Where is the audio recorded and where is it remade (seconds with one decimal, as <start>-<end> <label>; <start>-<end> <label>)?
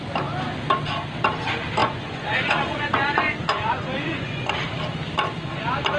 0.0-1.8 recorded; 1.8-4.5 remade; 4.5-6.0 recorded